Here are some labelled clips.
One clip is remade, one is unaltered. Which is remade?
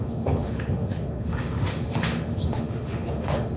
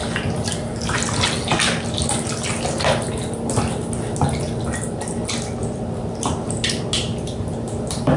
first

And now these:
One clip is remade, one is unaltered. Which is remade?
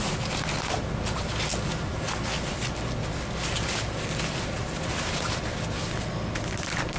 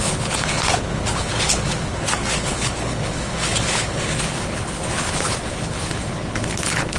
second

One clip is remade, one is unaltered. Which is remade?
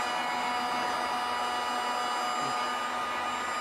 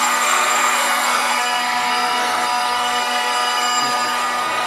second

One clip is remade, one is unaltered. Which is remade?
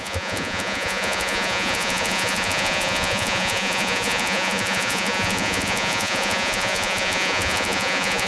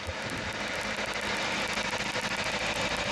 first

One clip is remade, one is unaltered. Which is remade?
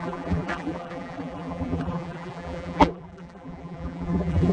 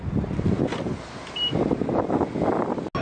first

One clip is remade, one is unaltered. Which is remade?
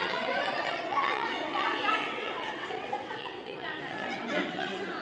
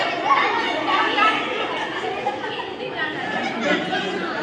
first